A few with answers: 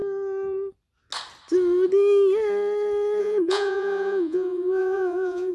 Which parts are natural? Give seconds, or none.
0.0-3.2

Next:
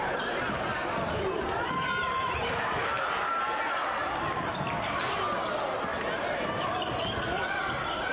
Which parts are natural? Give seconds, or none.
0.0-0.7; 2.2-2.8; 4.7-5.9; 7.6-8.1

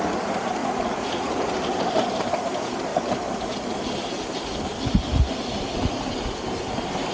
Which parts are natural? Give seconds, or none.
0.0-0.6; 1.8-7.1